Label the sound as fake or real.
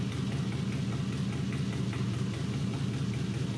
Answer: real